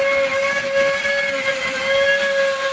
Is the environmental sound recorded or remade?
recorded